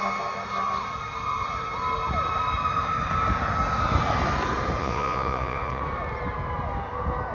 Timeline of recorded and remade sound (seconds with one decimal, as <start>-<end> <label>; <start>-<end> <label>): 0.0-4.8 recorded; 4.8-5.8 remade; 5.8-7.3 recorded